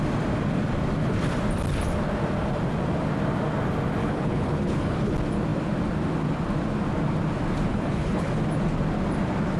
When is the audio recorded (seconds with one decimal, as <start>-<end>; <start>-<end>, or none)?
0.0-4.0; 5.1-7.7; 8.3-9.6